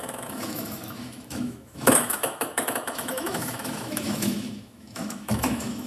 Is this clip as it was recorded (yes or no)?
no